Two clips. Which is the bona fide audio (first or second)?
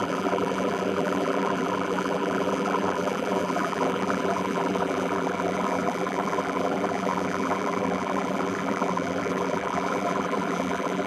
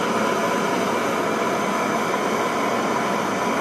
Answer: second